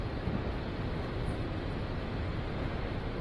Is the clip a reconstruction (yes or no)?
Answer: no